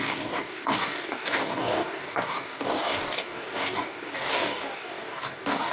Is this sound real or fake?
fake